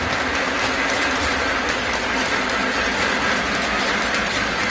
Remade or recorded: recorded